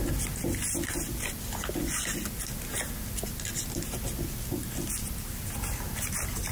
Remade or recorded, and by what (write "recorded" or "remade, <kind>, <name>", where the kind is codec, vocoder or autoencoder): recorded